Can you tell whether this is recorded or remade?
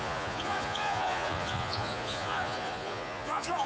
remade